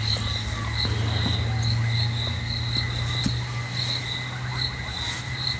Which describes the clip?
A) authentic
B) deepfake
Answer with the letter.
A